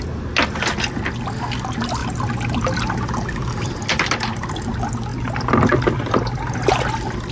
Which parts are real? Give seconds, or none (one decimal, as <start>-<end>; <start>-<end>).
0.0-7.3